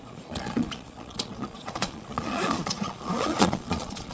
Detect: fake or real fake